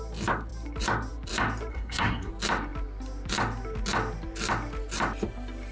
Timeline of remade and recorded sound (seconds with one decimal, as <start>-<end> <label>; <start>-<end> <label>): 0.0-1.7 recorded; 1.7-2.3 remade; 2.3-5.7 recorded